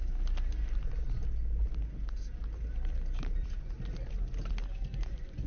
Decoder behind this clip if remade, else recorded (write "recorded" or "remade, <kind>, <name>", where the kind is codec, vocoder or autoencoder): recorded